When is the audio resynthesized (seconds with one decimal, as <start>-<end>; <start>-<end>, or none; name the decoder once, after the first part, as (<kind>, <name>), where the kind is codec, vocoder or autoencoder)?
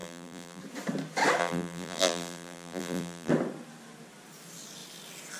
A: 0.0-0.6 (vocoder, BigVGAN v2); 1.4-3.3